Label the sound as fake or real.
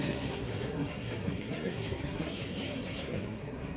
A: fake